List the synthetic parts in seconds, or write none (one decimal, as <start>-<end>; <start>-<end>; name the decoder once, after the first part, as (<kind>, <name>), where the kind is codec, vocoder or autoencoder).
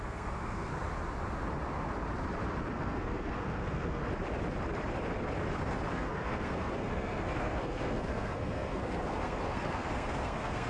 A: 0.0-0.7 (codec, SNAC); 2.7-4.0; 5.9-10.7